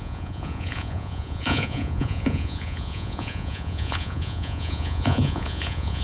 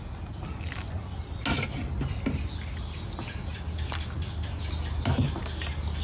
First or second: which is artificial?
first